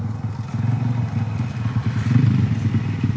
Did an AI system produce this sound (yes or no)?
no